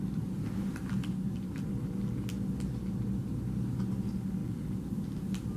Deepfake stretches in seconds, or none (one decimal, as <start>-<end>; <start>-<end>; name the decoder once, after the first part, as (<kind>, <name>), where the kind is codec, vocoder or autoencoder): 4.4-4.9 (vocoder, Vocos)

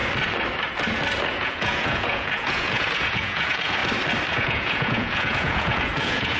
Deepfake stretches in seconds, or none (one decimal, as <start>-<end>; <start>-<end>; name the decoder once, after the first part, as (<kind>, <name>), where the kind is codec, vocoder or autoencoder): 1.3-3.8 (vocoder, Vocos); 4.3-6.4